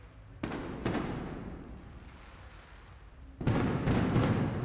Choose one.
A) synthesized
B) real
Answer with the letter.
B